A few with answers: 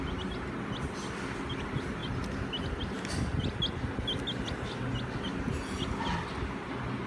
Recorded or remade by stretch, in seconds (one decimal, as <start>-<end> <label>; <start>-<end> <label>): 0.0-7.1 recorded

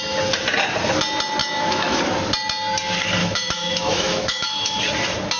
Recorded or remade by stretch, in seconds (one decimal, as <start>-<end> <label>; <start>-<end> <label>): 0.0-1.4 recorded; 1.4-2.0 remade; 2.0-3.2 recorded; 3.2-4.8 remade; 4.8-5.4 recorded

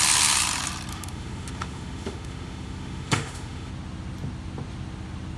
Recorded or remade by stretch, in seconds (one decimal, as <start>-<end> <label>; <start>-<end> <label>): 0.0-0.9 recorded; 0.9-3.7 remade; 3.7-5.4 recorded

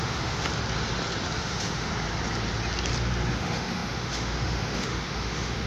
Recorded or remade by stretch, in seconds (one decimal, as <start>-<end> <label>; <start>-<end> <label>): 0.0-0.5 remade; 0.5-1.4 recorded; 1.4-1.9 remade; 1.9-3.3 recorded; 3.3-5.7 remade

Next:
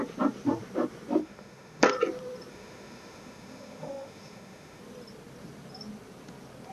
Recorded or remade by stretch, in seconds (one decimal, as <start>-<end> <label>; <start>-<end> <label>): 0.0-1.2 recorded; 1.2-1.8 remade; 1.8-2.5 recorded; 2.5-4.8 remade; 4.8-6.7 recorded